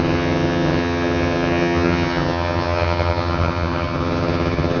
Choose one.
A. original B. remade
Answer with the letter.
B